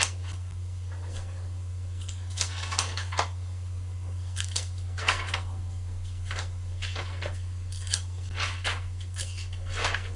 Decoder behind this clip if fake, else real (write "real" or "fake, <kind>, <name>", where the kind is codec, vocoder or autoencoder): fake, codec, SNAC